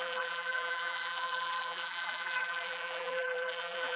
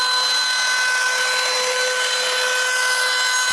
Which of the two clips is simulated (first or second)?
first